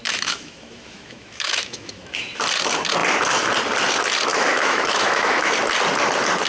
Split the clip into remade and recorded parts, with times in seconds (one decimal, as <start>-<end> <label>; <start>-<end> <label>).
0.0-2.4 remade; 2.4-4.3 recorded; 4.3-5.5 remade; 5.5-6.5 recorded